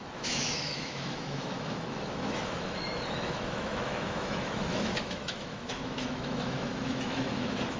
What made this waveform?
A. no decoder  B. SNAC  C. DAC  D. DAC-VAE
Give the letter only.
D